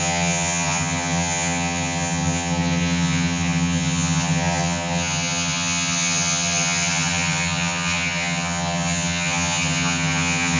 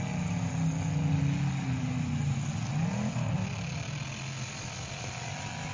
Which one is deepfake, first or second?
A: first